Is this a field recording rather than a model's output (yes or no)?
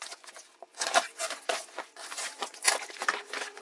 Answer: no